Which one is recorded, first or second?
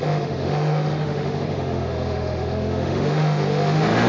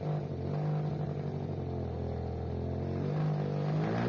second